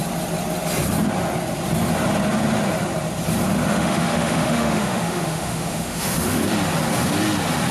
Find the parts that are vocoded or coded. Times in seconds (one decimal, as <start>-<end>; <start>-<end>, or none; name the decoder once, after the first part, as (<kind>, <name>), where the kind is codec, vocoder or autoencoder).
3.7-6.4 (autoencoder, DAC-VAE)